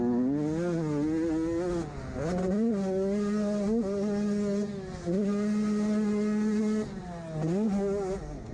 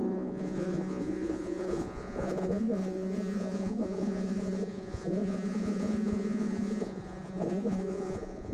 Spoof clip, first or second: second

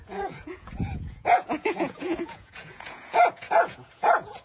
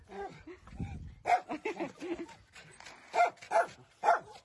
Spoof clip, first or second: first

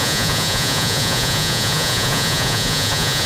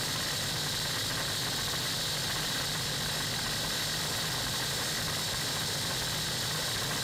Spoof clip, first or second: first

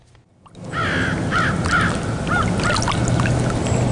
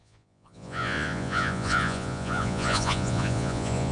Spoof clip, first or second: second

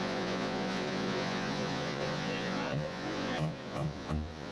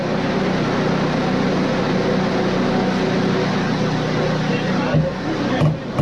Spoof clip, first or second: first